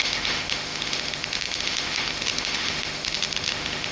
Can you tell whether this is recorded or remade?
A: remade